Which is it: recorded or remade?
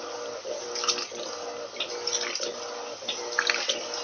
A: recorded